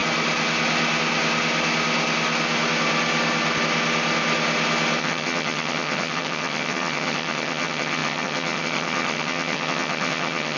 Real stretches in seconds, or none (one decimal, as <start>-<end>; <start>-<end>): 0.0-5.0